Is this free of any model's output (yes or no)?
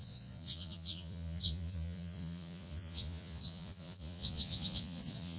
no